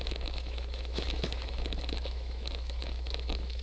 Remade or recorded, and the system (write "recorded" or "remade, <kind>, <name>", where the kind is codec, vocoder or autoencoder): remade, autoencoder, DAC-VAE